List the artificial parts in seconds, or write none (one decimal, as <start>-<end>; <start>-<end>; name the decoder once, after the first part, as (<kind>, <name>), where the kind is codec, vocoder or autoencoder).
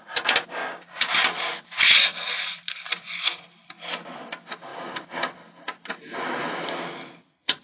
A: 0.6-1.4 (codec, DAC)